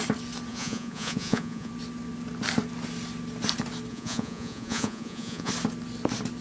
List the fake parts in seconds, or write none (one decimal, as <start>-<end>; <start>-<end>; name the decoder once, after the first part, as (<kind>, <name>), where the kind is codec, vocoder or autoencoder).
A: 0.5-1.7 (vocoder, Vocos); 3.9-5.5